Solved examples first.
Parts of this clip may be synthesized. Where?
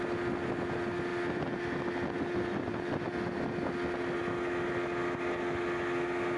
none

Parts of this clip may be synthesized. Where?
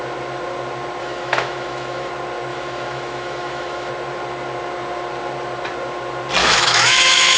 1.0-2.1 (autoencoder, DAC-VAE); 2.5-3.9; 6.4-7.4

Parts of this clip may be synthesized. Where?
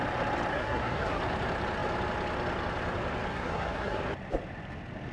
0.5-1.2 (codec, SNAC); 3.3-4.0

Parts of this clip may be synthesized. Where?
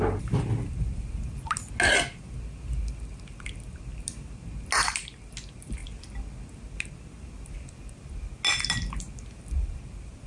none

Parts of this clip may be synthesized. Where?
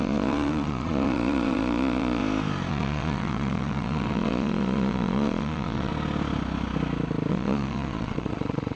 0.0-2.2 (vocoder, Vocos); 2.7-5.9; 7.3-8.8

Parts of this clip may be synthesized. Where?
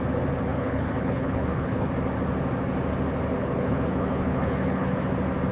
0.5-1.9 (codec, HILCodec); 3.4-5.0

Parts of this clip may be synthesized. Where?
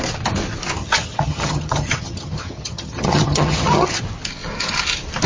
0.8-4.0 (vocoder, HiFi-GAN)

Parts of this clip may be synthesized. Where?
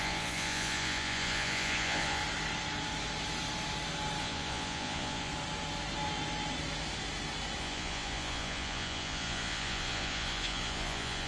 0.0-2.2 (vocoder, Vocos); 4.2-5.3; 7.6-11.3